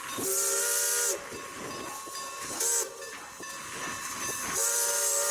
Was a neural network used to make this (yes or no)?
no